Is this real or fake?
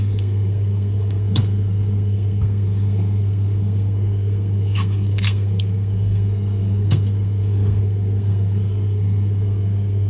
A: fake